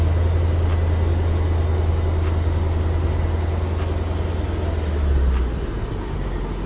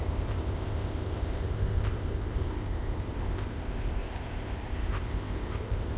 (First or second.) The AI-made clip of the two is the second